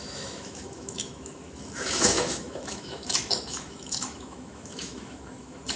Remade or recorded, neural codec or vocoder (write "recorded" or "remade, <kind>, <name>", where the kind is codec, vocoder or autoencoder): remade, autoencoder, DAC-VAE